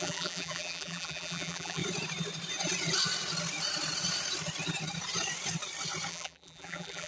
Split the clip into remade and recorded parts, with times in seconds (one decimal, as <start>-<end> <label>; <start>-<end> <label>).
0.0-1.8 remade; 1.8-6.1 recorded; 6.1-7.1 remade